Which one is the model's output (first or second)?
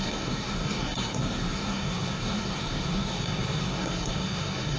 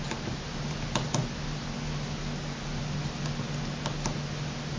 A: first